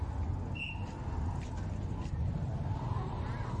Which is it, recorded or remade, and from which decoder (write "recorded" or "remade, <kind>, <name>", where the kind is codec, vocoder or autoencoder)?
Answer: recorded